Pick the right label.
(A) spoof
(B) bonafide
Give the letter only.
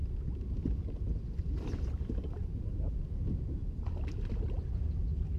B